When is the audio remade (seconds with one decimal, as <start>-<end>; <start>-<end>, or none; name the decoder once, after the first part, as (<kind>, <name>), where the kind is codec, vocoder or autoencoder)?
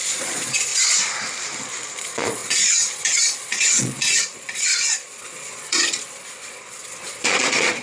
0.0-0.7 (vocoder, Vocos); 2.0-7.8